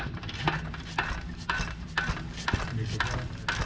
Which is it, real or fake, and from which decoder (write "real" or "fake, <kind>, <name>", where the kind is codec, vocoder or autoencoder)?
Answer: real